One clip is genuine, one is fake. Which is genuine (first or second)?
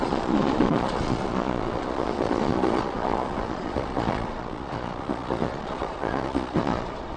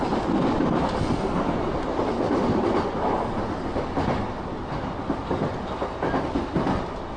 second